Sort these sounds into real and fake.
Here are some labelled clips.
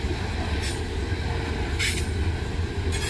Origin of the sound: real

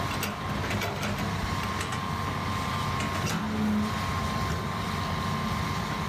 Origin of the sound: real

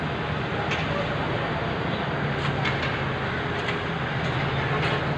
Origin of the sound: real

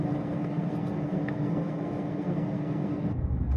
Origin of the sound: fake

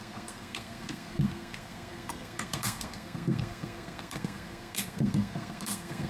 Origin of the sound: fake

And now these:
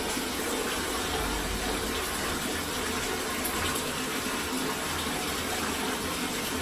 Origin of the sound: real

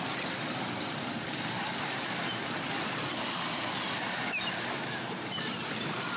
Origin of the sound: real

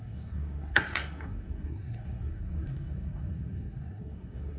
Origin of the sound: fake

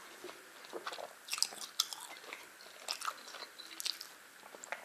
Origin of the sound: real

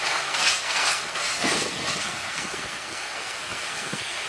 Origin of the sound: fake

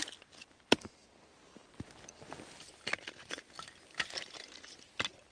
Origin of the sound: real